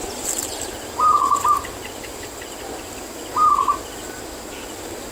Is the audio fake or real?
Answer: real